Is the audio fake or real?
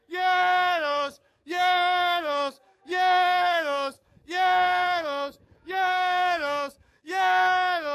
fake